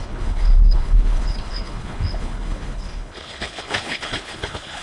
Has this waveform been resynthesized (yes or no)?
yes